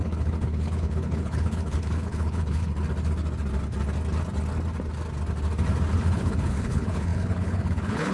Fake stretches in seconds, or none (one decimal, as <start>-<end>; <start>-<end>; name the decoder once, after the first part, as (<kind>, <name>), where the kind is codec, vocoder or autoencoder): 0.0-2.7 (codec, HILCodec); 5.9-8.1